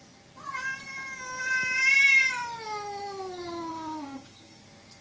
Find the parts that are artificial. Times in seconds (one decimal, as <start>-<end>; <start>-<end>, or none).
3.7-4.6